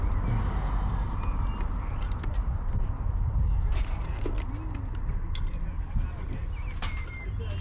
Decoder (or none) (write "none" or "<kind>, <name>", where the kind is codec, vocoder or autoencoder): none